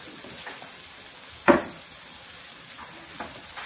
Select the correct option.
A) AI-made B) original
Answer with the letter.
B